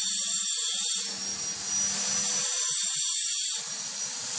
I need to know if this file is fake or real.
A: real